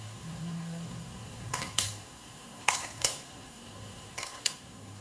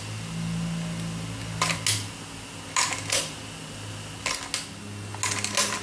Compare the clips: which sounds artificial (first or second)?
first